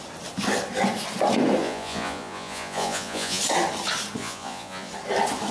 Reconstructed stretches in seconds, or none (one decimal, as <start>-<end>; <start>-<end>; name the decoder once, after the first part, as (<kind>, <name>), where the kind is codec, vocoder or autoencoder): 1.6-3.4 (vocoder, Vocos); 4.2-4.9